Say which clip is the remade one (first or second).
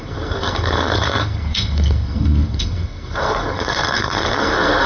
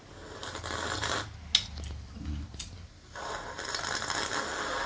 first